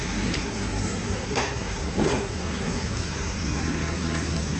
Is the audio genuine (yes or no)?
no